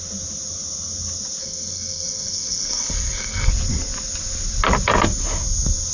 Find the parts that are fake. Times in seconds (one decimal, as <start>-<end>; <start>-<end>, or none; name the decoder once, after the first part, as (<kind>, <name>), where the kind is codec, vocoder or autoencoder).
1.4-3.5 (codec, SNAC)